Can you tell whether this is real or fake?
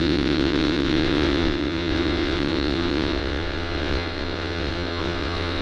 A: fake